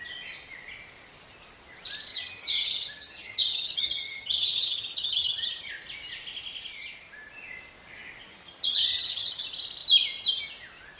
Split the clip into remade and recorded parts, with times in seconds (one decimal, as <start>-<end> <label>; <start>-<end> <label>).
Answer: 0.0-2.1 recorded; 2.1-5.7 remade; 5.7-8.3 recorded; 8.3-9.4 remade; 9.4-11.0 recorded